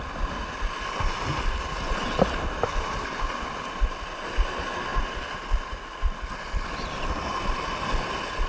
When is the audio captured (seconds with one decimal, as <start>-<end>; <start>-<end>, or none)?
0.0-8.5